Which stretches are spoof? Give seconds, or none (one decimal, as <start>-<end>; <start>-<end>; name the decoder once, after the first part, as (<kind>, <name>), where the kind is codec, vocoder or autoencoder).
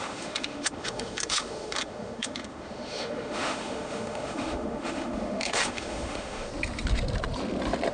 0.0-6.5 (autoencoder, DAC-VAE)